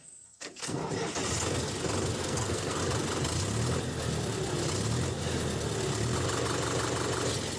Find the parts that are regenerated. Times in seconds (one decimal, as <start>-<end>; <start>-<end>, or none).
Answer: 0.0-0.8; 2.2-2.8